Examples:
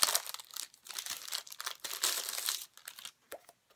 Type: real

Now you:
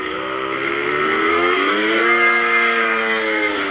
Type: fake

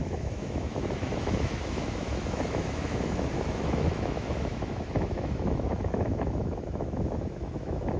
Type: fake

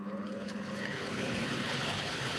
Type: fake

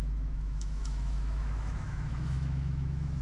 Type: fake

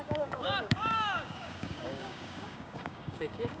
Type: fake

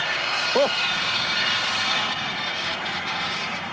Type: fake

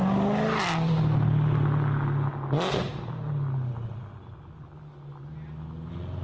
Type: real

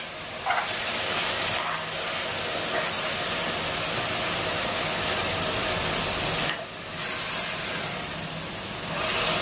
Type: real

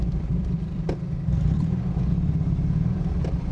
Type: fake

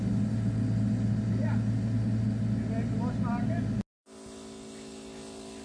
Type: real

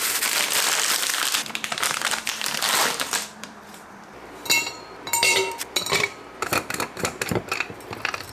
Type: fake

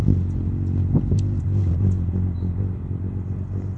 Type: real